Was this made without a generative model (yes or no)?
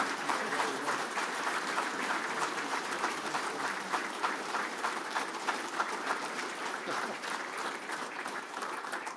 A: no